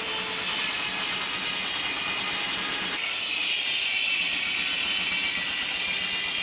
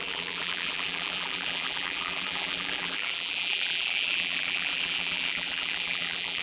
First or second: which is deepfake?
second